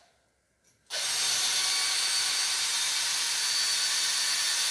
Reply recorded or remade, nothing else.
recorded